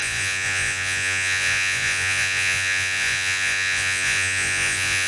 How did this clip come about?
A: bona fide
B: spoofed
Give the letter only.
B